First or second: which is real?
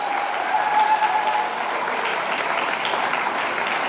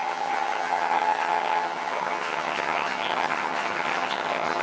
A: first